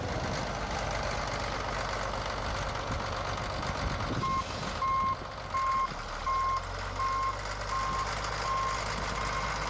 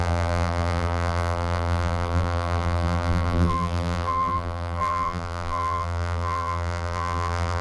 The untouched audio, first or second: first